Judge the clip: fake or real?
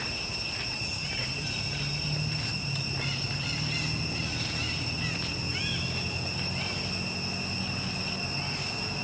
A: real